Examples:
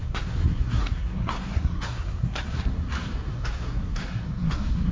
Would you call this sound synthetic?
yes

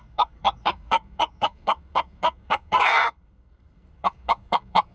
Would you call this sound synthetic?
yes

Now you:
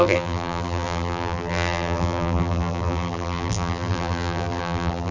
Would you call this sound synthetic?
yes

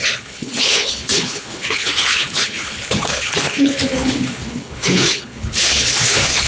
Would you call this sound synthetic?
yes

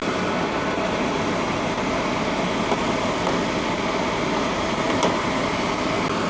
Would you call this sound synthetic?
no